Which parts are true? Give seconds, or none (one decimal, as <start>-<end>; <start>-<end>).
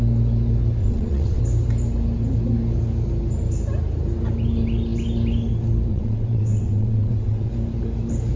0.0-0.8; 1.4-5.9; 7.5-8.4